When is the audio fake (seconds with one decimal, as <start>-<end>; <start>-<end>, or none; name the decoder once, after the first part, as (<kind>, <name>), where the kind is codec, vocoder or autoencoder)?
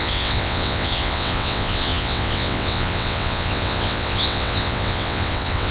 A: 0.0-5.7 (vocoder, WaveNeXt)